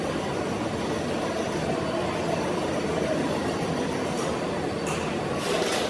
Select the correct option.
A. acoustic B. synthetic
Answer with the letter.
A